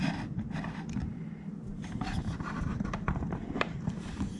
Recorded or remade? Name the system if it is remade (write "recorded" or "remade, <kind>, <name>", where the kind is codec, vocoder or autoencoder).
remade, vocoder, BigVGAN v2